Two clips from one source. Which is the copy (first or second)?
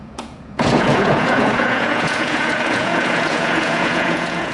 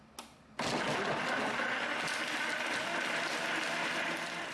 first